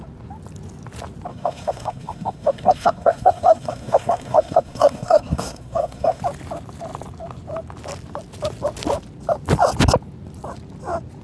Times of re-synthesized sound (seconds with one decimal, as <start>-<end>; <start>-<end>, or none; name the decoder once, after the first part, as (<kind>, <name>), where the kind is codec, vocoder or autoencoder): 1.3-6.2 (codec, SNAC)